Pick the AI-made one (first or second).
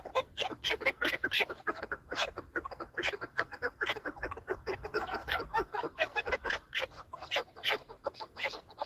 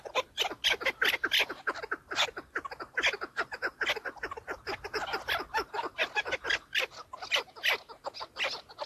first